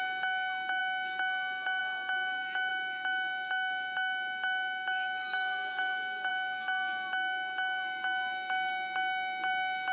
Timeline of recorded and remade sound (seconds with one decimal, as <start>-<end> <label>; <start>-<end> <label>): 0.0-9.9 recorded